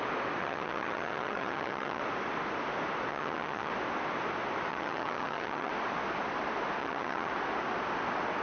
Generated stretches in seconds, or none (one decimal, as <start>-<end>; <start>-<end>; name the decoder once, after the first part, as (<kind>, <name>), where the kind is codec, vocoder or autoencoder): 0.4-2.0 (vocoder, HiFi-GAN); 3.1-3.7; 4.7-5.7; 6.8-7.3